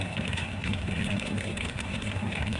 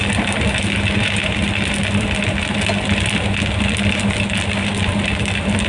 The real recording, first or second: second